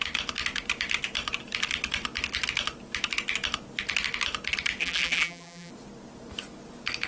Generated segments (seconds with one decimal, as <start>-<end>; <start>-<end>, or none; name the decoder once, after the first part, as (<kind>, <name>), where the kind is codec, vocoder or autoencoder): 4.8-5.7 (vocoder, BigVGAN v2)